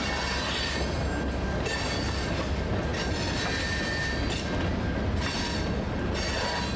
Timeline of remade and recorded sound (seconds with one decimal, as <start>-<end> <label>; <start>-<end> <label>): 0.0-6.8 recorded